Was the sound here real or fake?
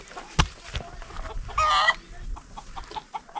real